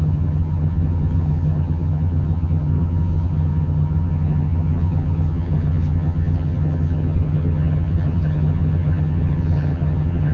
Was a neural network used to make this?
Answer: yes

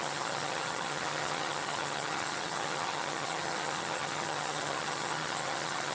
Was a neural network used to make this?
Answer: yes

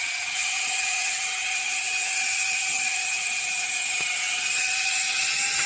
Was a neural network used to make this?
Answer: yes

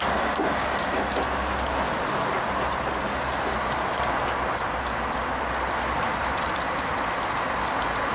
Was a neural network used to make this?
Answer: no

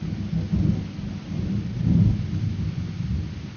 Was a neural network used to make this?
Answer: no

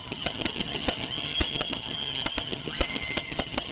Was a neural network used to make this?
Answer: yes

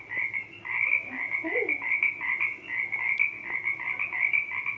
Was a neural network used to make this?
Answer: no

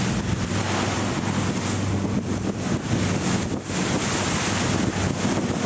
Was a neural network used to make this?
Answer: no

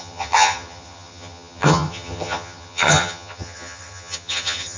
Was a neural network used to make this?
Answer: yes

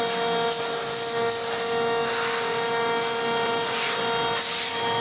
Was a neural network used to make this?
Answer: no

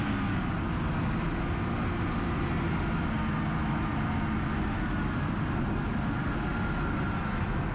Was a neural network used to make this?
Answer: no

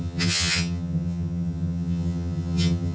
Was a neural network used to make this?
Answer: yes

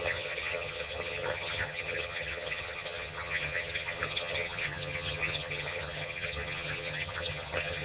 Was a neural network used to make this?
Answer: yes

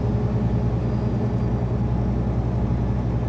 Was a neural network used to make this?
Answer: no